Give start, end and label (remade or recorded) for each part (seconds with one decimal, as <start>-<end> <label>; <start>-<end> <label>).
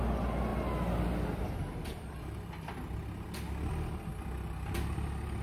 0.0-5.4 recorded